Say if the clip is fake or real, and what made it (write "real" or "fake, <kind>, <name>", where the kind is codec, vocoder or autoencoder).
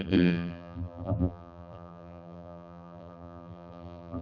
fake, vocoder, BigVGAN v2